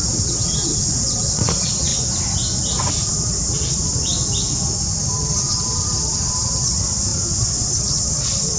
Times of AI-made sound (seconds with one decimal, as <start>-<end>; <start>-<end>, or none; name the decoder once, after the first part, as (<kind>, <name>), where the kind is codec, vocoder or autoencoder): 0.0-1.9 (vocoder, WaveNeXt); 3.1-4.1; 5.1-8.6